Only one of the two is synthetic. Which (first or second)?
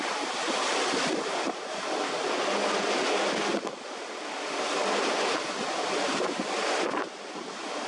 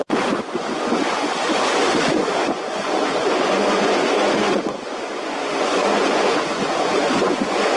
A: second